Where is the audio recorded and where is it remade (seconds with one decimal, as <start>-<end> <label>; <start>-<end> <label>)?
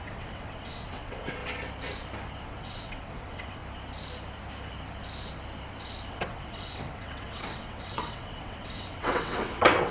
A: 0.0-1.4 remade; 1.4-2.4 recorded; 2.4-3.6 remade; 3.6-6.1 recorded; 6.1-9.9 remade